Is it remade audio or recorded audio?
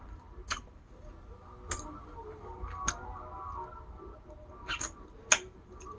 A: recorded